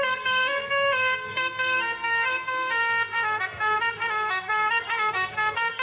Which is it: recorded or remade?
remade